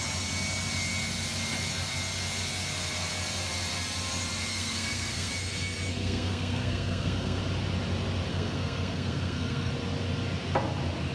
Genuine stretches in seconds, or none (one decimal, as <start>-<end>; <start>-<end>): 0.0-4.5; 5.3-5.9; 7.4-8.3; 9.7-11.1